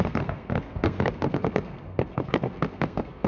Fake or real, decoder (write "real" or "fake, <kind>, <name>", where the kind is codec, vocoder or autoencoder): fake, codec, SNAC